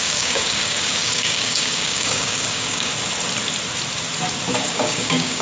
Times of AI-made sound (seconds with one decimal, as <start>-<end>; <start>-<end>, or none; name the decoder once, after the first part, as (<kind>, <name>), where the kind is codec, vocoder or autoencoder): 0.0-2.9 (codec, DAC); 4.7-5.4